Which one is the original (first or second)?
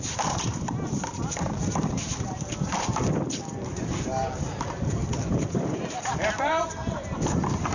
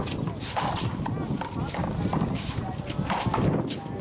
second